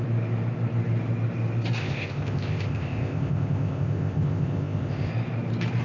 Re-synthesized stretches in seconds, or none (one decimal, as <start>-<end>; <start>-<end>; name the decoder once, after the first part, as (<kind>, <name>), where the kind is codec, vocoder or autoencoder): 1.8-5.1 (codec, ZipCodec)